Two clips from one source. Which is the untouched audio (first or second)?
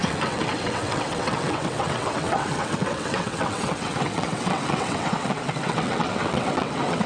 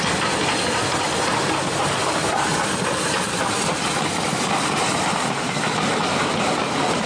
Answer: second